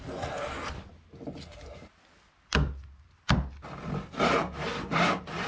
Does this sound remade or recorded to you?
recorded